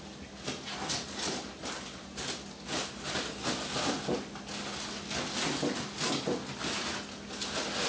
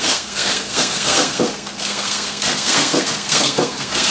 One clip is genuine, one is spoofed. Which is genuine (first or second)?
first